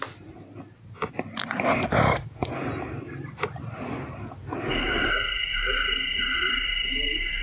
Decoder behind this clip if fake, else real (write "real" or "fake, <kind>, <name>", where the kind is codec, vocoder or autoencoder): real